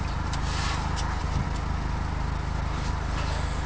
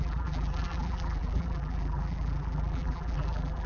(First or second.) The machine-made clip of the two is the second